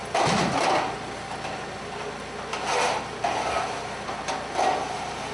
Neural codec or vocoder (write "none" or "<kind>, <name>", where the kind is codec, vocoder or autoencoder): none